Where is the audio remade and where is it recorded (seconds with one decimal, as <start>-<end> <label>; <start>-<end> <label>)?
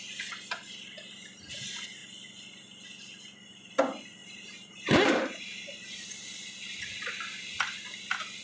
0.0-4.2 recorded; 4.2-6.1 remade; 6.1-8.4 recorded